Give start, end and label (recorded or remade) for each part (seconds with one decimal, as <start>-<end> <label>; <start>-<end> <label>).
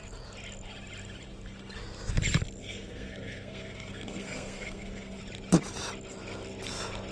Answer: 0.0-2.6 recorded; 2.6-5.2 remade; 5.2-7.1 recorded